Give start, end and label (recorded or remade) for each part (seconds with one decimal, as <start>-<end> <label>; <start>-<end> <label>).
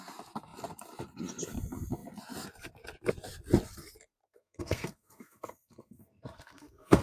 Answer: 0.0-4.2 recorded; 4.2-7.0 remade